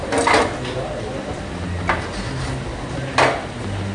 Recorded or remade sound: recorded